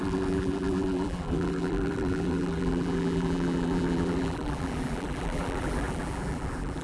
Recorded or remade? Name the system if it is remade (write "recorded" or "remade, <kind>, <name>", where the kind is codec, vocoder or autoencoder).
remade, vocoder, BigVGAN v2